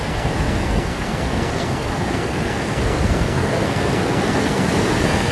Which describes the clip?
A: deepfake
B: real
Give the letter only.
A